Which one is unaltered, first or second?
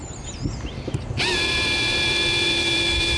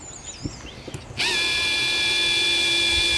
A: second